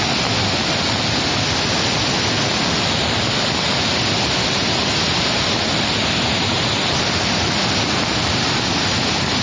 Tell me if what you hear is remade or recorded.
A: recorded